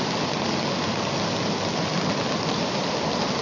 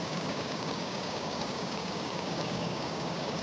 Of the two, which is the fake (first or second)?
second